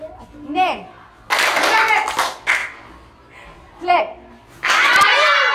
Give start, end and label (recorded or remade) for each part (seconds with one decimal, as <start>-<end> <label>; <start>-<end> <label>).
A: 0.0-5.5 recorded